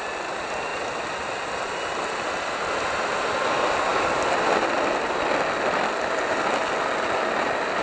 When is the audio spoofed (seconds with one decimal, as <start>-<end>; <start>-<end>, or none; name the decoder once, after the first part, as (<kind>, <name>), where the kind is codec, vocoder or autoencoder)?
none